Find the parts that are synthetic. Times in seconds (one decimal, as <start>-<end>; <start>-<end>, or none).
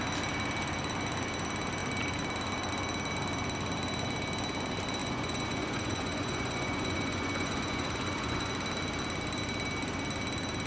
5.0-8.5